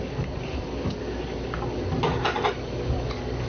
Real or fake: real